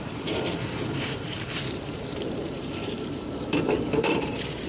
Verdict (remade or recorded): remade